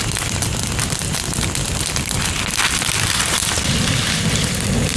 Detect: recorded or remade recorded